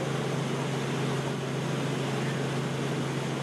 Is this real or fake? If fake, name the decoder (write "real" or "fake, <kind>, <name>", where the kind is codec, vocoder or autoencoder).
real